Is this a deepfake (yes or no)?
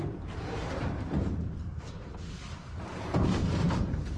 yes